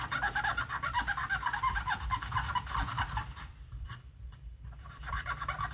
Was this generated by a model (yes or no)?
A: yes